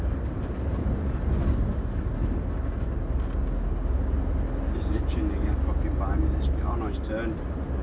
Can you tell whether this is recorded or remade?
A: recorded